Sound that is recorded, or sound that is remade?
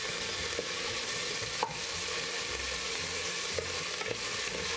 recorded